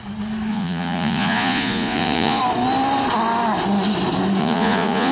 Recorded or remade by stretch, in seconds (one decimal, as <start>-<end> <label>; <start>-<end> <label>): 0.0-0.5 recorded; 0.5-2.4 remade; 2.4-4.4 recorded; 4.4-5.1 remade